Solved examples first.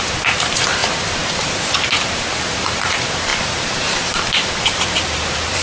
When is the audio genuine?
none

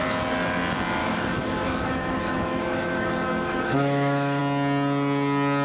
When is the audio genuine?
0.0-1.0; 4.4-5.6

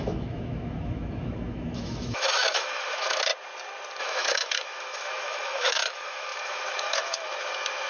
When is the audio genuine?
3.3-4.0

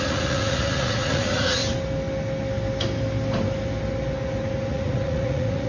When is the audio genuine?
1.6-4.7